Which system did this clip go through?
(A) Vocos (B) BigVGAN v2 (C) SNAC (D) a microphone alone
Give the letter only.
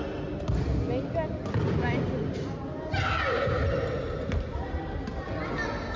D